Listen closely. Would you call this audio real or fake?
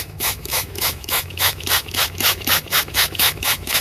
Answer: fake